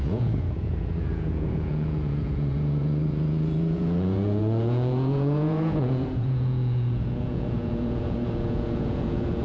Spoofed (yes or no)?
yes